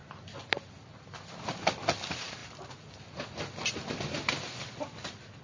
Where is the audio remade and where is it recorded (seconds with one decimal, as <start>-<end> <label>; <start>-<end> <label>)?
0.0-5.4 recorded